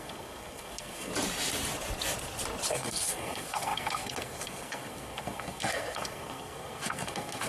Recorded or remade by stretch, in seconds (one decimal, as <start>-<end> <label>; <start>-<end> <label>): 0.0-1.1 remade; 1.1-2.7 recorded; 2.7-7.5 remade